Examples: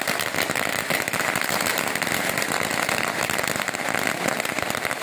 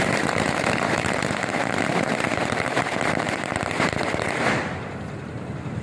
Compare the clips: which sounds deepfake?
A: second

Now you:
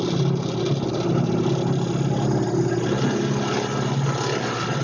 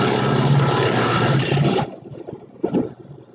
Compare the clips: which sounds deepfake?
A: second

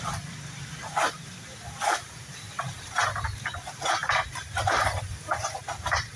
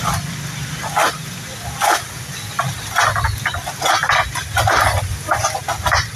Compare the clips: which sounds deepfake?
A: first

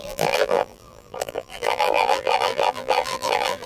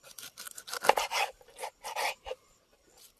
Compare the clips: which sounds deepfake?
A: first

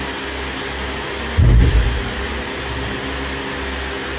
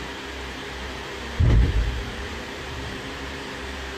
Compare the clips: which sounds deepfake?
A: second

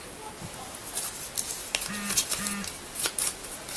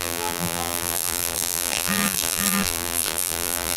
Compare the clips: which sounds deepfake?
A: second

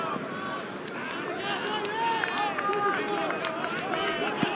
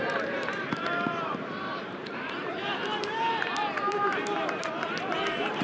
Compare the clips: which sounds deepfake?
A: second